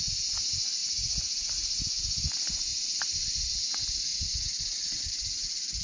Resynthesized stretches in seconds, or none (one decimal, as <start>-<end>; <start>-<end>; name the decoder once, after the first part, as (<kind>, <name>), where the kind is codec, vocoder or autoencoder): none